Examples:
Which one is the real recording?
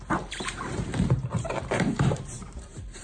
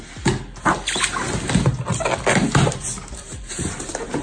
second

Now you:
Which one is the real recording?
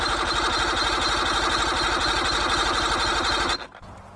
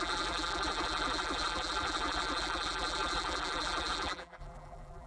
first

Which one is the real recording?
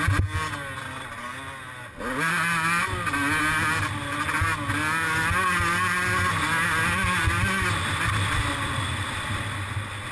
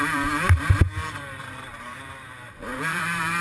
first